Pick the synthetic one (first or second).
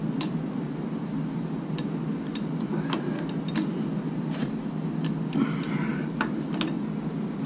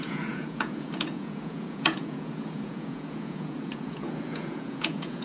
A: second